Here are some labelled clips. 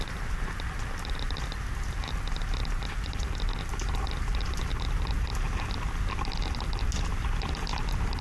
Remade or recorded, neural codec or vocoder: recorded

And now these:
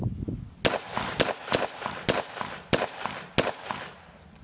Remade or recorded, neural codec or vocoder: recorded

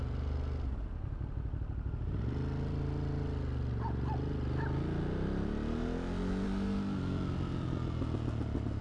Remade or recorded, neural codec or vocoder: recorded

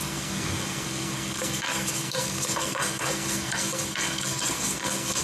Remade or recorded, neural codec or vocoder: remade, codec, SNAC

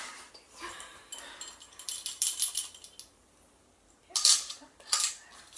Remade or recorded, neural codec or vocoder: recorded